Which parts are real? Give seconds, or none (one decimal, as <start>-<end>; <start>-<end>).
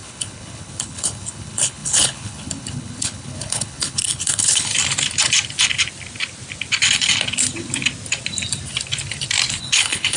4.7-9.6